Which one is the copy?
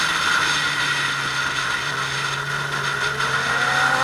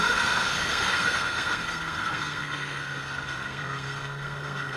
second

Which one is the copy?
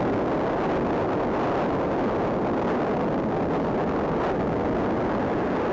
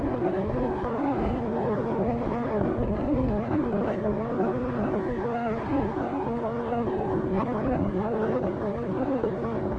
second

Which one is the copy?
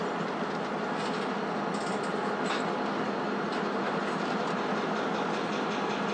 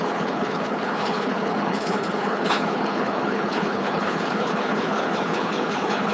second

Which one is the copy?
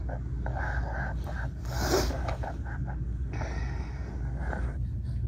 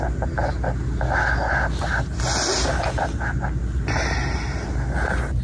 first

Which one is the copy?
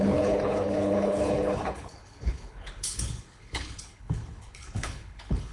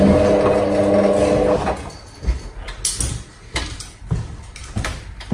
first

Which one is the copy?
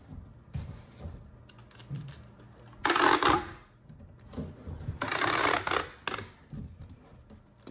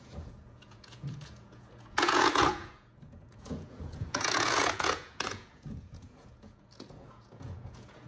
second